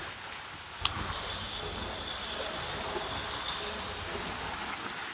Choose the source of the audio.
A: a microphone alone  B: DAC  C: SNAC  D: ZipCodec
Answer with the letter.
A